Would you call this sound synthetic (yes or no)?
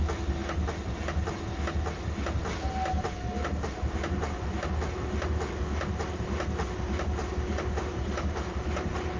no